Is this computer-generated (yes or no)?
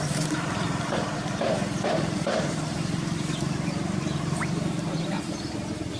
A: yes